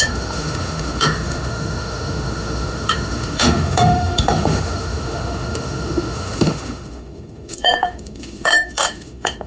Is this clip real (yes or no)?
no